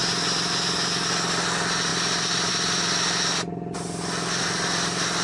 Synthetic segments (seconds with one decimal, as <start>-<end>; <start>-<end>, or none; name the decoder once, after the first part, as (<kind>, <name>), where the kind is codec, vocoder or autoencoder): none